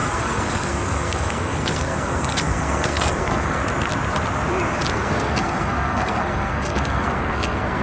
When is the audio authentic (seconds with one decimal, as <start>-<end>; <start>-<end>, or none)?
3.6-4.9